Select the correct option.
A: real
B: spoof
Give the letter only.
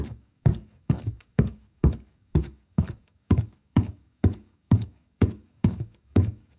B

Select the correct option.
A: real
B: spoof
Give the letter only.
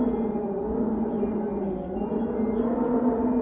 A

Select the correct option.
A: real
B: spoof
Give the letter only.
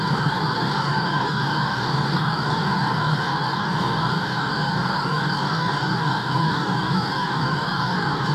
B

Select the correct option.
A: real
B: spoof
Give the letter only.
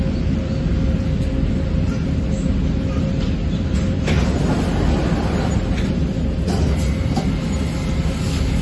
A